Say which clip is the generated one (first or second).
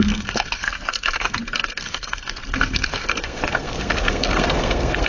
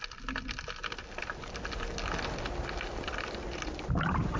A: first